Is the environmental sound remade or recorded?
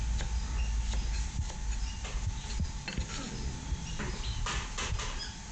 recorded